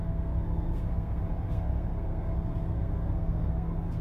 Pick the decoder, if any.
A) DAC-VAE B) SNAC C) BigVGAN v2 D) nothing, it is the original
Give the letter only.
B